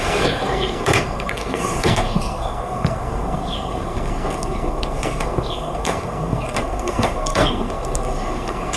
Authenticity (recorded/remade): remade